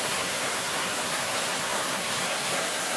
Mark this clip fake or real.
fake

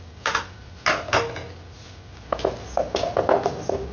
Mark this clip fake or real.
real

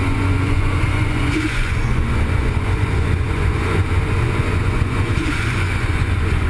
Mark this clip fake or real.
fake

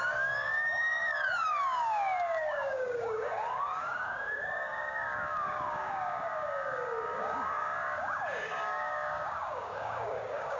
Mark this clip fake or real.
fake